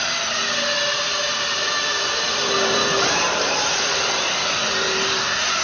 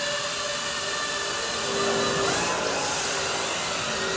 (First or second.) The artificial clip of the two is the first